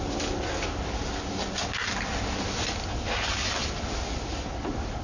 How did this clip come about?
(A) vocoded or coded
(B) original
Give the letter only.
B